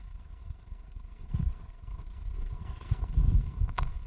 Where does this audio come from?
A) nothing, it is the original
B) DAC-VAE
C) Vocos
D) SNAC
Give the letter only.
D